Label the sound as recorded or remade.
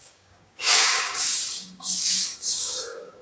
remade